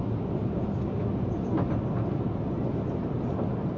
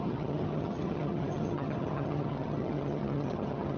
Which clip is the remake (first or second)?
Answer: second